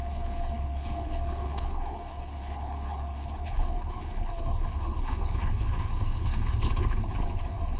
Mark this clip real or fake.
fake